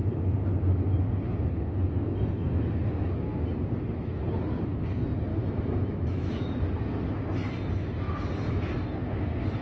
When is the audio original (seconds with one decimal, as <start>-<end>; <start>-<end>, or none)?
0.0-5.3; 6.6-9.6